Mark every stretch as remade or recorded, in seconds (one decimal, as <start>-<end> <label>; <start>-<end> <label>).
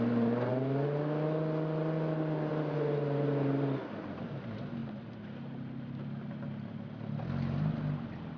0.0-8.4 recorded